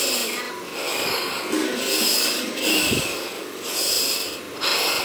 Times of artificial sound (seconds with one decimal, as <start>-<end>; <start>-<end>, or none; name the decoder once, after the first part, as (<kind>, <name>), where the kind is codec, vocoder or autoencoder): 0.9-3.9 (codec, DAC)